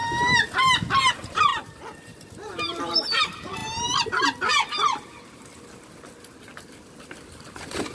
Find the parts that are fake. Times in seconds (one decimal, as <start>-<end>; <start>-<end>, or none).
1.1-3.6; 4.2-7.9